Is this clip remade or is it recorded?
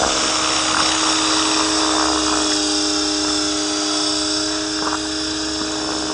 recorded